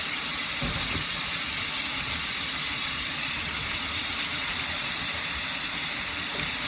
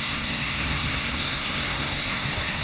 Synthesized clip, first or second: second